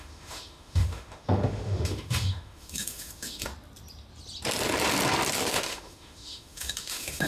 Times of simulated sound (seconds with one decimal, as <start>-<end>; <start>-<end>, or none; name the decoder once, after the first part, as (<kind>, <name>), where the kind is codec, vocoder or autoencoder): 0.0-3.5 (autoencoder, DAC-VAE); 5.5-7.3